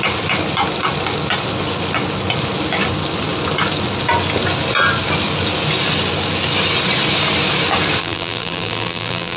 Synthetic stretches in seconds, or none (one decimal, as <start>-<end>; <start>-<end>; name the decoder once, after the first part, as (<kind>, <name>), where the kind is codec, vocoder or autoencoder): 8.0-9.4 (vocoder, BigVGAN v2)